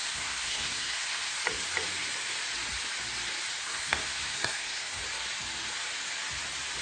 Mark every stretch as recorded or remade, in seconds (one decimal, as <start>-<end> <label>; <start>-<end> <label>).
0.0-1.3 remade; 1.3-3.6 recorded; 3.6-5.0 remade; 5.0-6.8 recorded